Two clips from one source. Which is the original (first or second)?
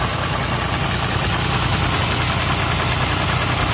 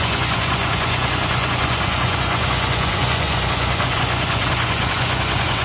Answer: first